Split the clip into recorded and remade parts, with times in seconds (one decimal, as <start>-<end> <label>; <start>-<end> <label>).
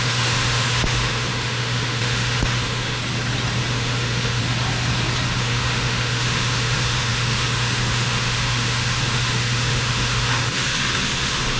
0.0-3.0 remade; 3.0-3.7 recorded; 3.7-4.4 remade; 4.4-5.4 recorded; 5.4-11.6 remade